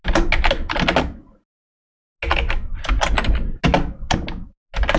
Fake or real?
real